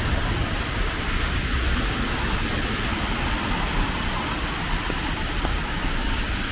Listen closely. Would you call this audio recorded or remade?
recorded